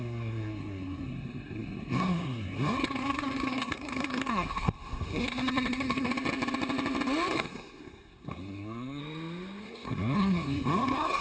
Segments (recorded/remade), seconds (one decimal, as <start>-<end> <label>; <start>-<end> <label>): 0.0-6.1 remade; 6.1-7.3 recorded; 7.3-9.0 remade; 9.0-9.6 recorded; 9.6-11.2 remade